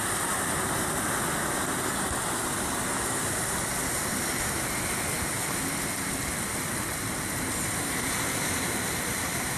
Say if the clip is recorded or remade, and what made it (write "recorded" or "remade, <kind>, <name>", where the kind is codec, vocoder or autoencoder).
recorded